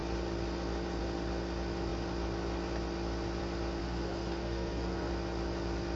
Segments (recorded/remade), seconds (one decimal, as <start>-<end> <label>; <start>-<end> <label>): 0.0-3.8 recorded; 3.8-5.1 remade; 5.1-6.0 recorded